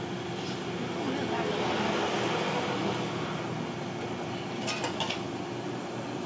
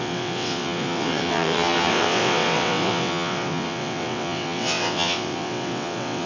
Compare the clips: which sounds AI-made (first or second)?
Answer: second